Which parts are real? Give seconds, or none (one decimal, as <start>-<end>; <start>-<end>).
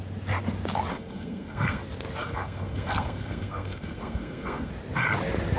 0.0-0.9; 1.8-2.2; 4.7-5.6